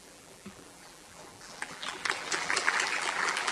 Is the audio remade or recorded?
remade